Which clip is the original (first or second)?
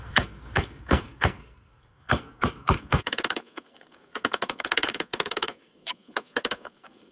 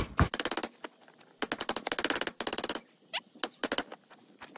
second